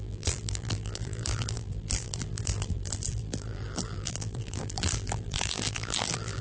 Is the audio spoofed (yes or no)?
yes